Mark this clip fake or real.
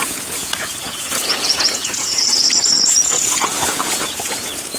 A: fake